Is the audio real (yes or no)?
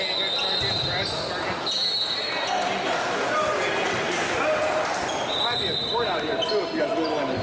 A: yes